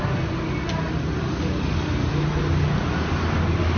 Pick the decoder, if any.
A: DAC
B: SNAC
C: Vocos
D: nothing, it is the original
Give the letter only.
D